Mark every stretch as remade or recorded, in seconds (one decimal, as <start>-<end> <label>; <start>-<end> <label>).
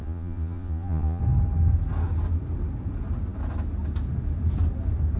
0.0-1.2 remade; 1.2-5.2 recorded